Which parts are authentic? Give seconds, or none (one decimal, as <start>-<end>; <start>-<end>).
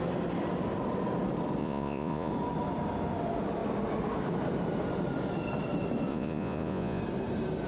0.0-1.6; 2.3-6.1; 7.0-7.7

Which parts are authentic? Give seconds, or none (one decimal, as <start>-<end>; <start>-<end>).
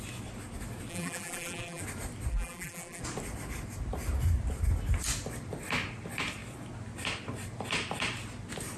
0.0-0.9; 1.8-2.3; 3.0-8.8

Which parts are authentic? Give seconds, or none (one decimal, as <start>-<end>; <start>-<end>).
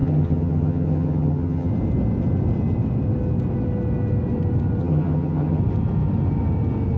1.7-4.8; 5.6-7.0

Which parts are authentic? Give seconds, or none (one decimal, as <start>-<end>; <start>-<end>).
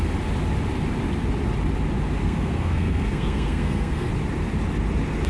0.0-2.2; 4.1-5.3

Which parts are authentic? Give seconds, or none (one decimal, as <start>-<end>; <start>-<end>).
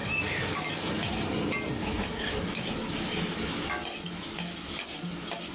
0.7-1.8; 4.7-5.5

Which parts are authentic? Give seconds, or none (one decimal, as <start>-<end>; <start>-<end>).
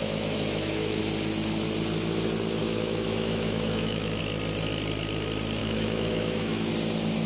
1.0-2.6; 4.2-5.6; 6.7-7.3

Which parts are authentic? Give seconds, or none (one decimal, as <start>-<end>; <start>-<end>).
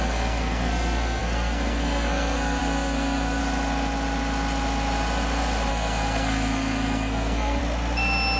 3.4-5.7; 7.6-8.4